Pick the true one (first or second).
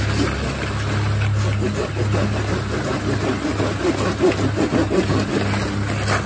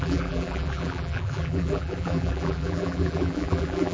first